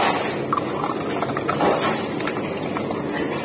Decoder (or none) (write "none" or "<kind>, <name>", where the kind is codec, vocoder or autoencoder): none